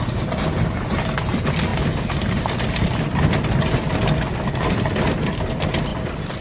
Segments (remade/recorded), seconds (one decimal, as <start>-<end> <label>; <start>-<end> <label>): 0.0-6.4 recorded